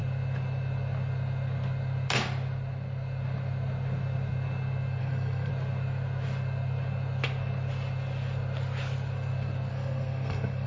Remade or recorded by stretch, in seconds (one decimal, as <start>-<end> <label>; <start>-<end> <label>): 0.0-5.0 recorded; 5.0-5.5 remade; 5.5-9.7 recorded; 9.7-10.7 remade